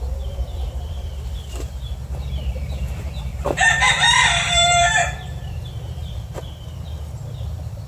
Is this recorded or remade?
remade